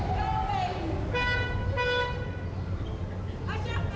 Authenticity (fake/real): real